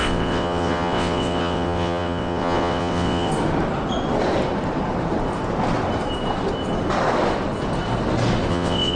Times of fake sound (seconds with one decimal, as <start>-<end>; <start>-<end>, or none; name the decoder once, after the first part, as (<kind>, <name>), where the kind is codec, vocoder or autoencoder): 0.0-3.3 (vocoder, WaveNeXt); 8.5-9.0